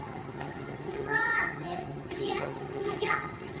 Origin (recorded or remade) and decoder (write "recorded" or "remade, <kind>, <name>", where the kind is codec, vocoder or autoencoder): remade, vocoder, HiFi-GAN